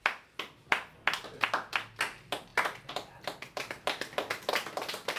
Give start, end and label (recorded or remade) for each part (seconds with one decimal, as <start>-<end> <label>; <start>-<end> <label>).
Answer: 0.0-5.2 recorded